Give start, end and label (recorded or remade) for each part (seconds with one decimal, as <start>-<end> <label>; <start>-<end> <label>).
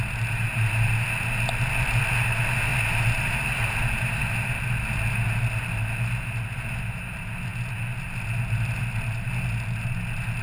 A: 0.0-10.4 recorded